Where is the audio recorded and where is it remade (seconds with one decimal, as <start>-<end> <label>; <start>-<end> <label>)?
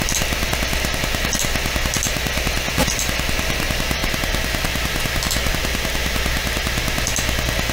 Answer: 0.0-4.0 recorded; 4.0-5.5 remade; 5.5-7.7 recorded